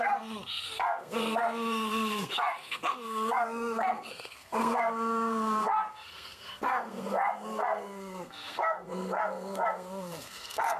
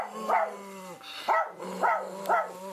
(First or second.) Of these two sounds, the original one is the second